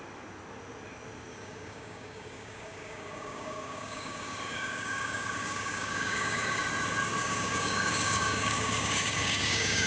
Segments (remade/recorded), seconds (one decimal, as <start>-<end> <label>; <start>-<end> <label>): 0.0-1.3 recorded; 1.3-6.6 remade; 6.6-7.2 recorded; 7.2-9.9 remade